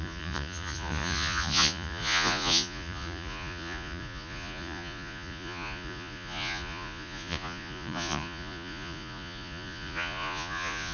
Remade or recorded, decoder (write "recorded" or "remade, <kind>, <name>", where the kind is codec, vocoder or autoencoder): remade, vocoder, Vocos